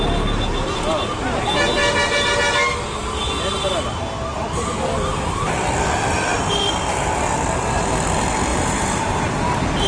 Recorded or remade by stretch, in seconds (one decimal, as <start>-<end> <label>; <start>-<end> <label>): 0.0-1.8 recorded; 1.8-2.6 remade; 2.6-8.5 recorded; 8.5-9.4 remade; 9.4-9.9 recorded